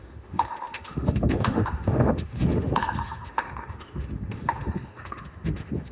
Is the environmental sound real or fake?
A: fake